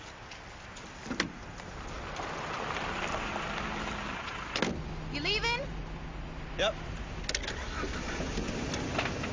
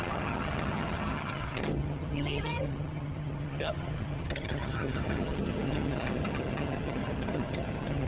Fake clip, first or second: second